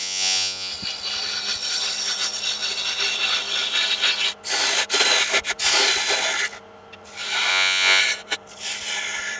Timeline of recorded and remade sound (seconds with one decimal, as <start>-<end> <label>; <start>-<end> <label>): 0.0-0.7 remade; 0.7-7.5 recorded; 7.5-8.0 remade; 8.0-9.4 recorded